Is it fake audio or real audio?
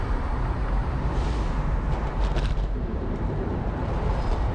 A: fake